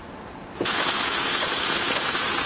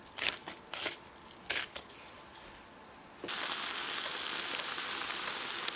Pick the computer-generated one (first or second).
first